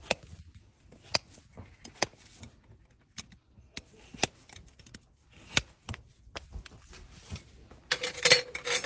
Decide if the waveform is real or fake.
real